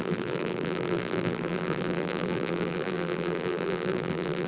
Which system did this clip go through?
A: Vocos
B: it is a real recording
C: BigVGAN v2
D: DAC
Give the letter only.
C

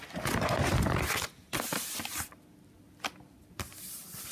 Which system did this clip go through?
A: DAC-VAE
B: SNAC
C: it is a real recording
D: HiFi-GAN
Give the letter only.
C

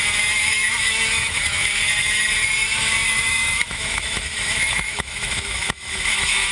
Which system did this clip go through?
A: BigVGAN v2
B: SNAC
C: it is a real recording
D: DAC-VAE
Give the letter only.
D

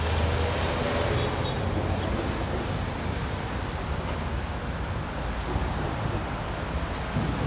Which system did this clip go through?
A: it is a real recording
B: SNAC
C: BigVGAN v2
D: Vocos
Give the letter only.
A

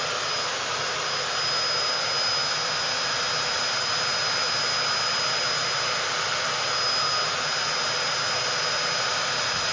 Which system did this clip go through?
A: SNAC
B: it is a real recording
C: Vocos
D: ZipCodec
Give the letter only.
B